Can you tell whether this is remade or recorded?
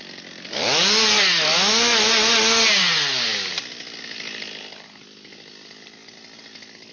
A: recorded